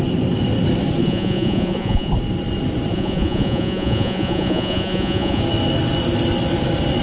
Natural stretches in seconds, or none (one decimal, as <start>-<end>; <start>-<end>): 0.0-1.0; 2.1-2.9; 5.4-7.0